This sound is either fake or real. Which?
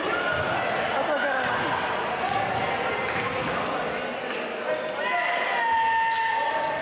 real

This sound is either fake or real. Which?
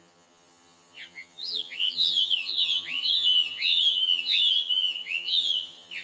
fake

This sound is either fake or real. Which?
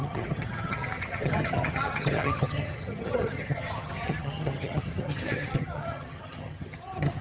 fake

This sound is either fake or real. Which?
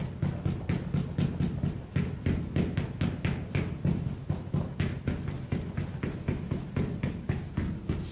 real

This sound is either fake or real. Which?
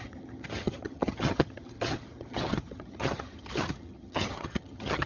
fake